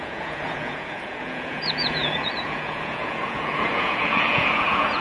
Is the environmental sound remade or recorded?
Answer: remade